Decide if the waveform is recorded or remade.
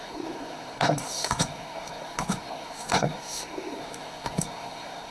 remade